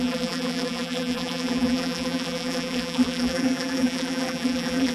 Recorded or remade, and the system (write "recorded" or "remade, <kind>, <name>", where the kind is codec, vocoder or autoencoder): remade, vocoder, BigVGAN v2